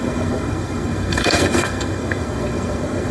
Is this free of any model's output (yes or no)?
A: no